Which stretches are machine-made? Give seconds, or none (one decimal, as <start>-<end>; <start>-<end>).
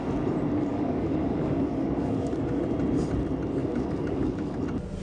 0.7-2.6; 3.6-4.6